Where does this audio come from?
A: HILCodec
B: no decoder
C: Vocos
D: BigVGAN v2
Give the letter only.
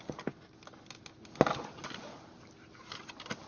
B